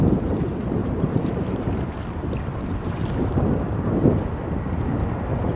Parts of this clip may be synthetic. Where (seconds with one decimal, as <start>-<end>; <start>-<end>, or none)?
0.8-4.2